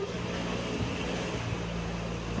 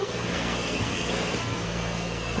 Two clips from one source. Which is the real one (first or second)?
first